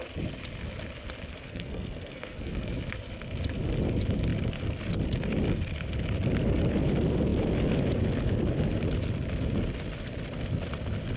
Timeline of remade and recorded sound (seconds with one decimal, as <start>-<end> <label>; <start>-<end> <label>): 0.0-1.3 recorded; 1.3-2.7 remade; 2.7-11.2 recorded